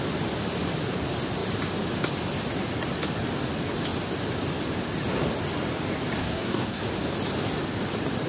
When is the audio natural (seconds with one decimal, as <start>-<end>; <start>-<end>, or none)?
0.0-6.2; 6.8-8.3